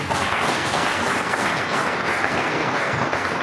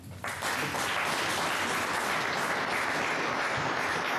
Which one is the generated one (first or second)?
first